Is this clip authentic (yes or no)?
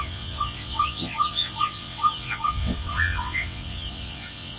no